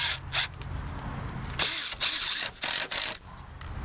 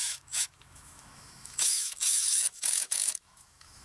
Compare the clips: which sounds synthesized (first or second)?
second